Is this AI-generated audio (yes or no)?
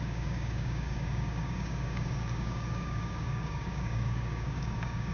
yes